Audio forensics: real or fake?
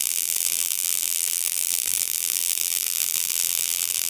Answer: fake